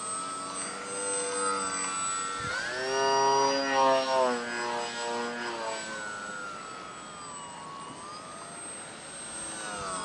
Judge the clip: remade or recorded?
recorded